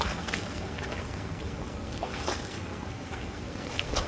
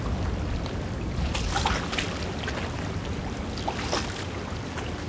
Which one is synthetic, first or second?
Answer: first